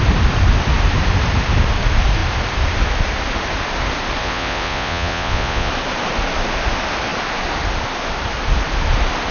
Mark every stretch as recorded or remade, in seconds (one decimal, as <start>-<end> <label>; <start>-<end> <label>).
0.0-4.2 recorded; 4.2-5.7 remade; 5.7-9.3 recorded